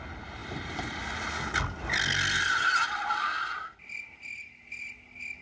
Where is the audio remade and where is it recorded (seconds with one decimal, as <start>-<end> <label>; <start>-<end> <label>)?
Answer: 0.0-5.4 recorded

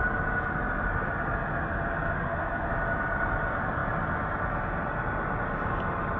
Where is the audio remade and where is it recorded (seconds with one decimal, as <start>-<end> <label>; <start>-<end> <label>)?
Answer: 0.0-2.1 recorded; 2.1-2.7 remade; 2.7-6.2 recorded

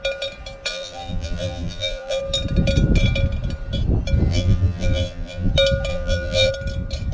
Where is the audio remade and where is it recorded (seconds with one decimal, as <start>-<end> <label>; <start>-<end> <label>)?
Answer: 0.0-0.7 recorded; 0.7-2.2 remade; 2.2-4.3 recorded; 4.3-5.5 remade; 5.5-5.9 recorded; 5.9-6.5 remade; 6.5-7.1 recorded

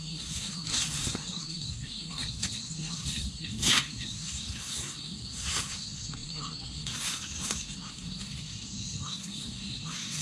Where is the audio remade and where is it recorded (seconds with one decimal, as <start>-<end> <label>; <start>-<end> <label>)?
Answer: 0.0-10.2 remade

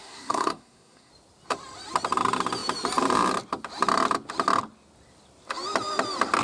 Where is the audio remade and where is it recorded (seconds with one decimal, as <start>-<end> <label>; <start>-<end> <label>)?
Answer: 0.0-1.1 remade; 1.1-6.4 recorded

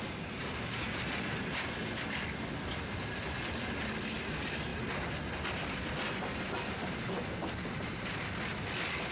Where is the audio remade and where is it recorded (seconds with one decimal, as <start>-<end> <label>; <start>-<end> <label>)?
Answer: 0.0-9.1 recorded